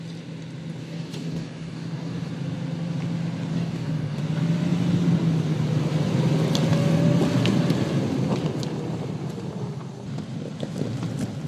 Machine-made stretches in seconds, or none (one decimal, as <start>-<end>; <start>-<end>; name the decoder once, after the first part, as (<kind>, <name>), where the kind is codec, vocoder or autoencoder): 0.8-2.3 (codec, DAC); 3.5-4.2